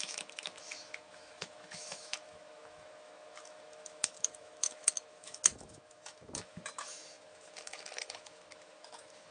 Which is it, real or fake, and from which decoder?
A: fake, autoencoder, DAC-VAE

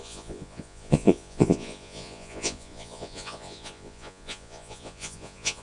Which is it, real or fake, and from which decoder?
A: fake, vocoder, Vocos